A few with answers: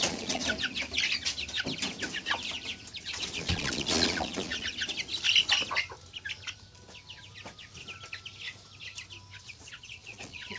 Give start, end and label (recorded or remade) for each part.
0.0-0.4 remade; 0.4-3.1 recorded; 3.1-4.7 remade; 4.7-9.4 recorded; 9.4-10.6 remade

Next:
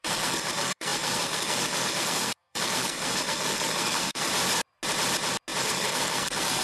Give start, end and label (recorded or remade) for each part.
0.0-4.3 remade; 4.3-5.6 recorded; 5.6-6.6 remade

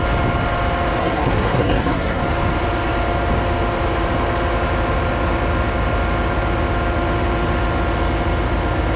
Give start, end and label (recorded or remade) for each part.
0.0-1.0 recorded; 1.0-2.2 remade; 2.2-9.0 recorded

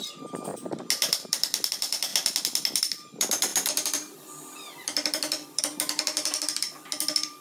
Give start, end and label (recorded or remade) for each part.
0.0-0.5 remade; 0.5-1.7 recorded; 1.7-2.1 remade; 2.1-2.8 recorded; 2.8-7.4 remade

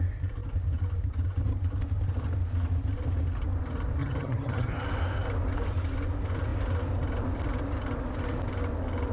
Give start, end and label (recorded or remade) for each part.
0.0-4.0 recorded; 4.0-4.7 remade; 4.7-9.1 recorded